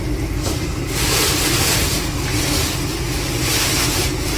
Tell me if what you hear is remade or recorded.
recorded